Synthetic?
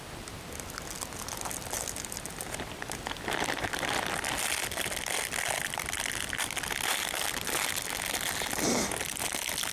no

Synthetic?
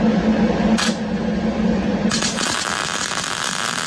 no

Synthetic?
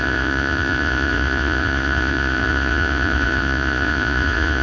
yes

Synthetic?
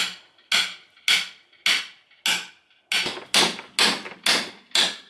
no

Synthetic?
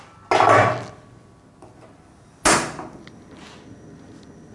no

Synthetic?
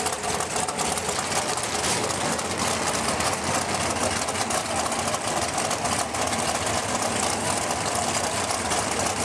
no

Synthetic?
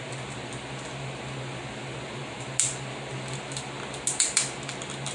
no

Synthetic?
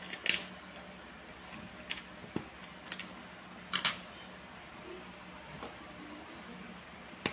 no